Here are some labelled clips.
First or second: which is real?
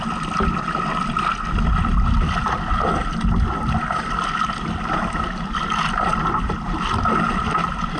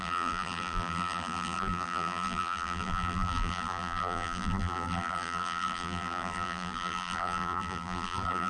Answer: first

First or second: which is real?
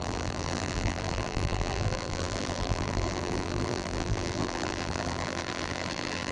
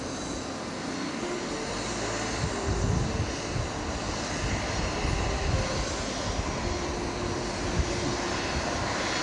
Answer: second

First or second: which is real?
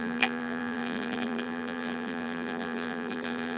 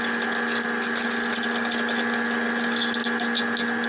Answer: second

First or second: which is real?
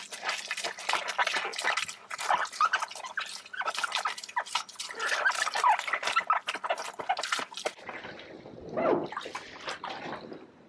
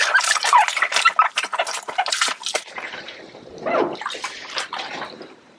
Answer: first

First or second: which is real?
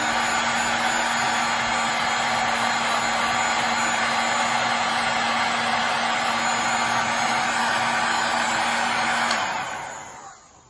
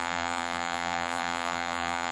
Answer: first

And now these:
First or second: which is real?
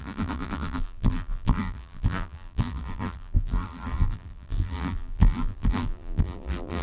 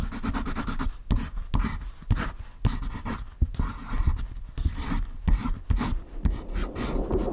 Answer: second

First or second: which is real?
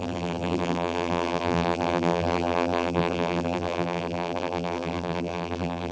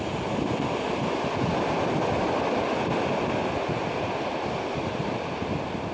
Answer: second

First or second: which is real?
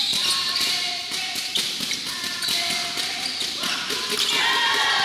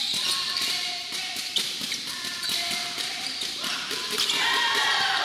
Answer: first